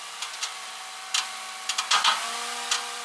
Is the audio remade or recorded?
remade